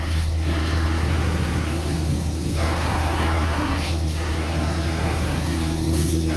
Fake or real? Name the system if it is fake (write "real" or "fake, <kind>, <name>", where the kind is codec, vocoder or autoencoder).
fake, codec, SNAC